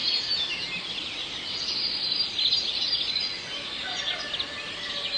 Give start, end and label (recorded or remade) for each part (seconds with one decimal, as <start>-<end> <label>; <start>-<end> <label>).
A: 0.0-3.1 recorded; 3.1-3.5 remade; 3.5-5.2 recorded